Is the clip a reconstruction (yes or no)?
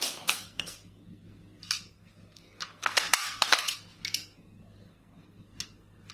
yes